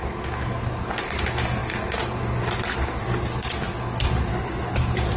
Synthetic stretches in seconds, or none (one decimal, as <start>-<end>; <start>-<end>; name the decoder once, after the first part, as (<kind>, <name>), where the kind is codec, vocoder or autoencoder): 4.3-4.8 (codec, HILCodec)